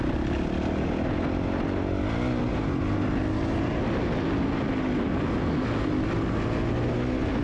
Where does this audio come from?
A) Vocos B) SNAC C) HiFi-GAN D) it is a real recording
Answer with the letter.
D